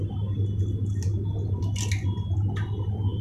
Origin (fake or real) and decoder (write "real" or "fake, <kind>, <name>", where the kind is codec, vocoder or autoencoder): real